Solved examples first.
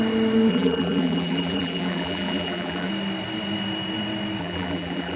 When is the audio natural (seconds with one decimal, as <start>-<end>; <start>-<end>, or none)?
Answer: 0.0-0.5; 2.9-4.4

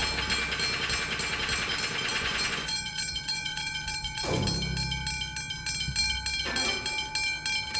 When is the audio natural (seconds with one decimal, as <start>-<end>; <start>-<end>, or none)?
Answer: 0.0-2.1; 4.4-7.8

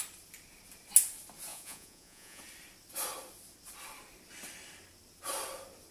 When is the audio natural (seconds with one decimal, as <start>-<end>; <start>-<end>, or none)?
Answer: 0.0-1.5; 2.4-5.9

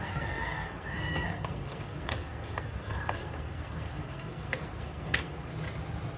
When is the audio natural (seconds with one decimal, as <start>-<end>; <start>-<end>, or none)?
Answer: 5.5-6.2